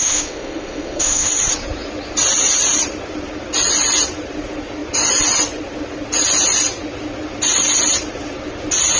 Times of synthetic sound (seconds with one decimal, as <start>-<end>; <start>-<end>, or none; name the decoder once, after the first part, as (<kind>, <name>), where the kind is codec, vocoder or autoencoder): 0.0-1.3 (autoencoder, DAC-VAE)